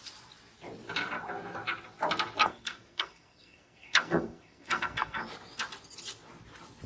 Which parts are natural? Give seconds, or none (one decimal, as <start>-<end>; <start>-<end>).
0.0-2.4; 5.2-6.9